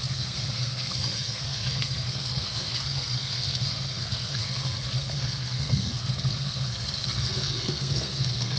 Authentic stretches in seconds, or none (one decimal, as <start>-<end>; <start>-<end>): none